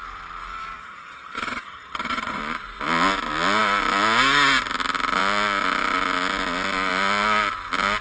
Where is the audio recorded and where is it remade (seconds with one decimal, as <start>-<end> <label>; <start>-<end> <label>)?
0.0-0.8 recorded; 0.8-2.4 remade; 2.4-8.0 recorded